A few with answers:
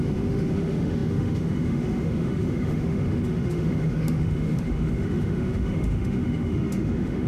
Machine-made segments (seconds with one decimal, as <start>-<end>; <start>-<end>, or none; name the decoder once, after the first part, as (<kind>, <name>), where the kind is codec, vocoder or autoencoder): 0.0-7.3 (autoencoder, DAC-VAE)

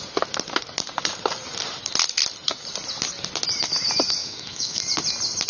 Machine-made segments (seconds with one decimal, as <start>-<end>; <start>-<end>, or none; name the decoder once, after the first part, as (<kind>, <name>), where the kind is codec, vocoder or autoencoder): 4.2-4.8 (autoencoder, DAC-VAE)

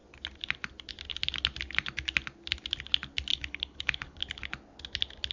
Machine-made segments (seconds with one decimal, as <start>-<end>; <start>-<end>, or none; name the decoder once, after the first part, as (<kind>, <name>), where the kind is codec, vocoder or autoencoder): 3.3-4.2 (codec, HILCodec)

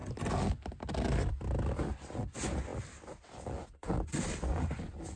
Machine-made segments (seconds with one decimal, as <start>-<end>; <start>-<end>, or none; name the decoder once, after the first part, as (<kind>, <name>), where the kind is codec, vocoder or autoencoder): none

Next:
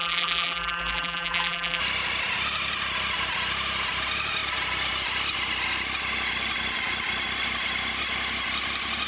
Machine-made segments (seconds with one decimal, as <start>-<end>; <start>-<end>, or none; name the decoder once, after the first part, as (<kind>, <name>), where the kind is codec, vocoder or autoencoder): 0.0-1.8 (vocoder, BigVGAN v2)

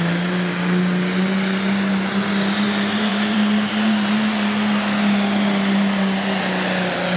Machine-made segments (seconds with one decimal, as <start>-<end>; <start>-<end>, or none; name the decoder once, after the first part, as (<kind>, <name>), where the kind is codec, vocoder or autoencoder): 3.1-4.1 (vocoder, BigVGAN v2)

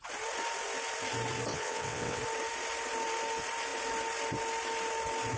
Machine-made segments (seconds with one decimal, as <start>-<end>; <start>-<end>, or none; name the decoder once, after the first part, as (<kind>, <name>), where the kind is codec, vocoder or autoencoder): 1.5-2.2 (vocoder, WaveNeXt)